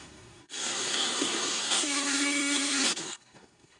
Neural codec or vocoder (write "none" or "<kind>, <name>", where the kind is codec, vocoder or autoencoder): codec, SNAC